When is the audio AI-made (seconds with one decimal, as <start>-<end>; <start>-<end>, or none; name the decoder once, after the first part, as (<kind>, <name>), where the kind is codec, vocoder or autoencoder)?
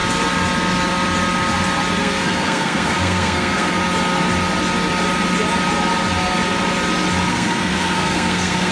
2.0-3.8 (codec, SNAC); 7.3-8.7